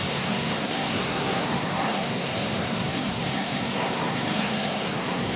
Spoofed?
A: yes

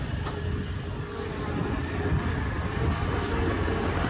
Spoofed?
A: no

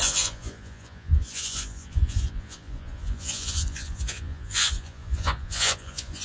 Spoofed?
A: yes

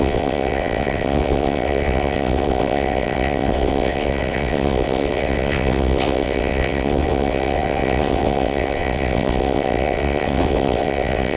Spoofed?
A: yes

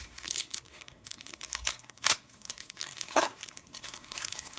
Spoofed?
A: yes